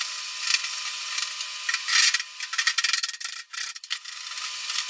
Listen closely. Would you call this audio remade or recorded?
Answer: recorded